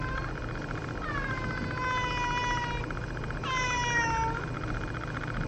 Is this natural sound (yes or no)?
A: yes